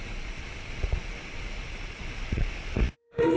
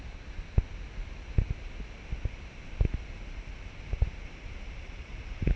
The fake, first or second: first